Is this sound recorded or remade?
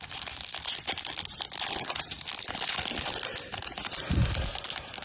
recorded